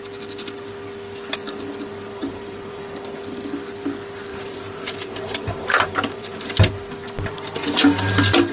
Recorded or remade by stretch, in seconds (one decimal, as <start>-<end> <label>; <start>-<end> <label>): 0.0-2.2 recorded; 2.2-2.8 remade; 2.8-4.3 recorded; 4.3-6.5 remade; 6.5-8.5 recorded